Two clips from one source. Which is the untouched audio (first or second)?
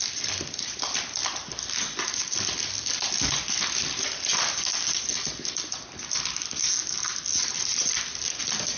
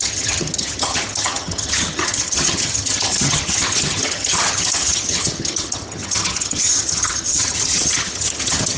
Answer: first